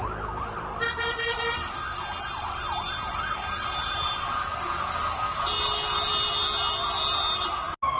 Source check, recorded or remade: recorded